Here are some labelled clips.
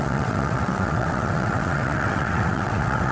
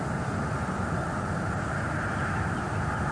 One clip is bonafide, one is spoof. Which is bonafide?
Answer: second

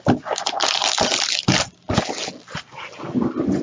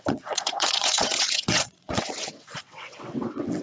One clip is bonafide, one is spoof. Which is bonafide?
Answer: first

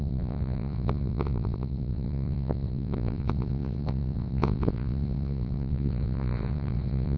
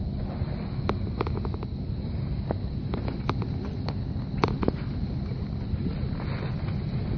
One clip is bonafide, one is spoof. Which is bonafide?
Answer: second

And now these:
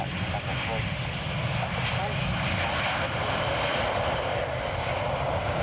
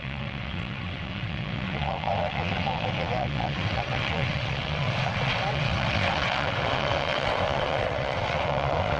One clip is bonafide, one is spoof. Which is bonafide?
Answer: first